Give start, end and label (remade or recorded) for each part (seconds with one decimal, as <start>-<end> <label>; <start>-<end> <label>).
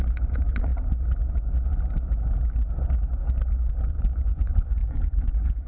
0.0-0.7 remade; 0.7-3.9 recorded; 3.9-5.7 remade